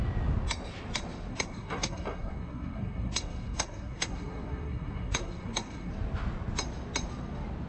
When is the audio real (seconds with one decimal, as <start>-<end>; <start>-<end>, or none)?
0.0-1.3; 5.9-7.7